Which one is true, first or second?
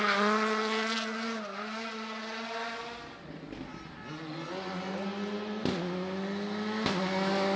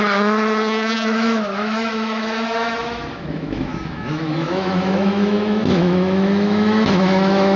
first